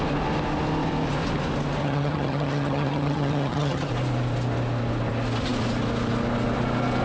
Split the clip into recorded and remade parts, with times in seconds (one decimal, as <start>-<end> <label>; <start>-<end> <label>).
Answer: 0.0-1.8 recorded; 1.8-3.9 remade; 3.9-7.0 recorded